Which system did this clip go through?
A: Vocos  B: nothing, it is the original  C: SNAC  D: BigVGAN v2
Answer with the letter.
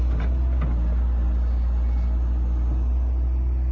B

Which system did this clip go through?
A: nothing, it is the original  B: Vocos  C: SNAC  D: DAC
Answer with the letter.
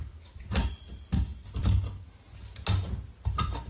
A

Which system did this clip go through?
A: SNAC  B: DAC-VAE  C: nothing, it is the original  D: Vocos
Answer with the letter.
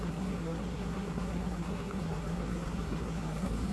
A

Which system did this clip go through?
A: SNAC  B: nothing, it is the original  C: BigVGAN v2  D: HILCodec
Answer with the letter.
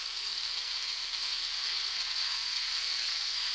A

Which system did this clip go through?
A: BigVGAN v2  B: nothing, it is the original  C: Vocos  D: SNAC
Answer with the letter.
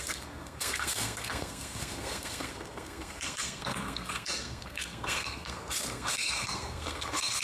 D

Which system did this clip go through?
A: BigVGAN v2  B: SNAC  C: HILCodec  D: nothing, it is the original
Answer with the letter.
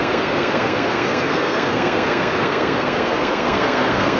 B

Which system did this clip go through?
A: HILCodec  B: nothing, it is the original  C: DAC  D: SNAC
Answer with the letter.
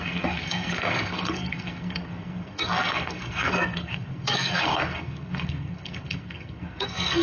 D